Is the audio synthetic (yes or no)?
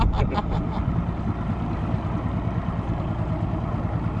no